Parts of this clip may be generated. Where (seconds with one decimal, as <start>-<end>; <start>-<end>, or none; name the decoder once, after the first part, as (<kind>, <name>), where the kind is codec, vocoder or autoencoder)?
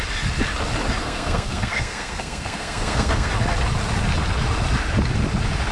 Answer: 1.0-3.3 (codec, SNAC)